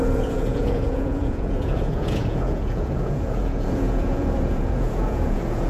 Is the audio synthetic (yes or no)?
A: yes